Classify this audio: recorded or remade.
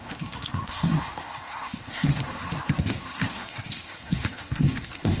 remade